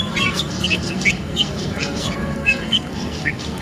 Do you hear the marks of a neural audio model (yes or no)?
yes